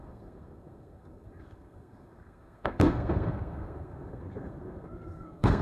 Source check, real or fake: fake